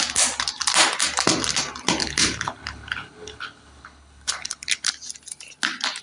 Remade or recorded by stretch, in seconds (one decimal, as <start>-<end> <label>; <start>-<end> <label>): 0.0-2.0 recorded; 2.0-4.9 remade; 4.9-6.0 recorded